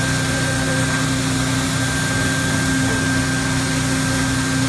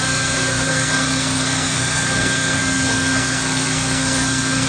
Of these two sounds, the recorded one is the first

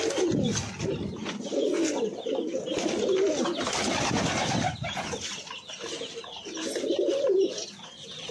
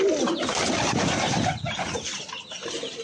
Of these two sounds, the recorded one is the first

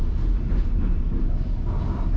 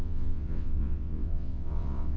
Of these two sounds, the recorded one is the first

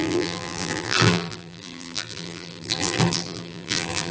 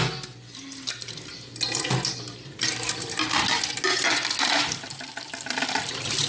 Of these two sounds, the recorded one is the second